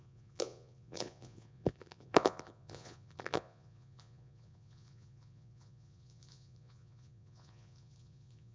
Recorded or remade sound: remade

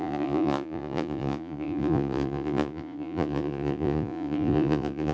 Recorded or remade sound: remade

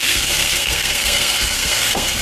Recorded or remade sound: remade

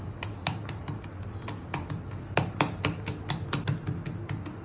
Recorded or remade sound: recorded